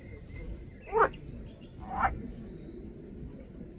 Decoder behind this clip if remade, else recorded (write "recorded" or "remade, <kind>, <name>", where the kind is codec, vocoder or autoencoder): recorded